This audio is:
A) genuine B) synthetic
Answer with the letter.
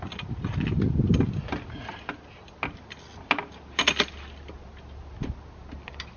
A